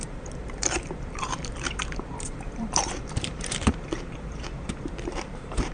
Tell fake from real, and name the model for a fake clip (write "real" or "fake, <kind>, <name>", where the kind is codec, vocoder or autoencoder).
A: fake, vocoder, BigVGAN v2